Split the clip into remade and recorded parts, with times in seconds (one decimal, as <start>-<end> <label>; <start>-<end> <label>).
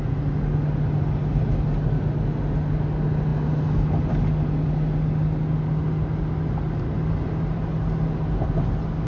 0.0-9.1 recorded